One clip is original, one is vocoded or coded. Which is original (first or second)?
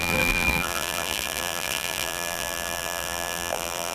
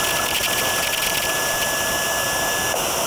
second